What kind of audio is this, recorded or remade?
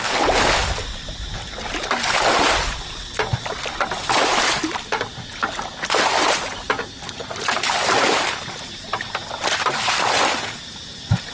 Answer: recorded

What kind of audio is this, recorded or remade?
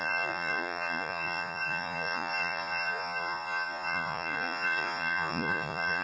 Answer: remade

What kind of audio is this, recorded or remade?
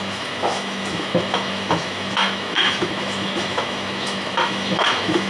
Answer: remade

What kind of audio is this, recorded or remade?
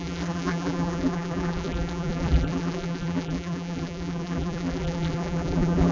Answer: remade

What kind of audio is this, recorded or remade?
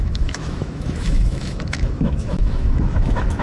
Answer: remade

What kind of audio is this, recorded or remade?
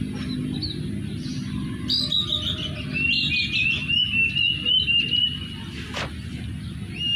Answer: recorded